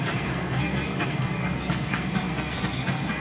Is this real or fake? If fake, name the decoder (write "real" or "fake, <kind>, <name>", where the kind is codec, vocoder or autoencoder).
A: fake, codec, SNAC